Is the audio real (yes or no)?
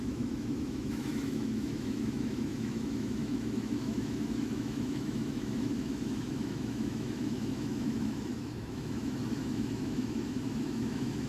no